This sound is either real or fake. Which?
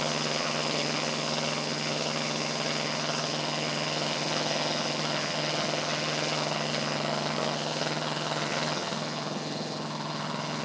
fake